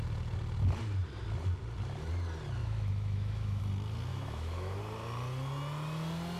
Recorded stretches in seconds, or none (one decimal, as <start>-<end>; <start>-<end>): 0.0-2.6; 3.6-4.1; 4.8-6.4